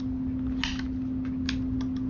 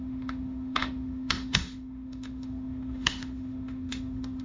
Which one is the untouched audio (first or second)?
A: first